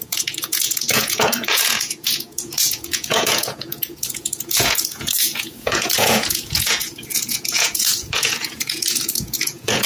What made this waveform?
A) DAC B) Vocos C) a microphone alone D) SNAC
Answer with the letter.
B